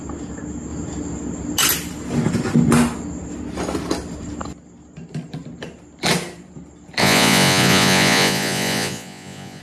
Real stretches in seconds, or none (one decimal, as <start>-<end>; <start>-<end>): 0.0-7.0